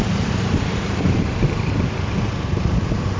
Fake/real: fake